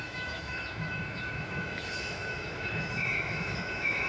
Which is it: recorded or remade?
remade